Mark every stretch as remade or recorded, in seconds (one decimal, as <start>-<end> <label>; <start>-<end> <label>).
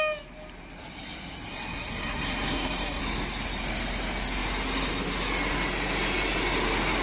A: 0.0-1.5 recorded; 1.5-3.0 remade; 3.0-7.0 recorded